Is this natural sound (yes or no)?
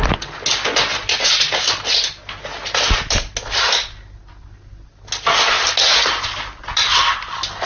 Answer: yes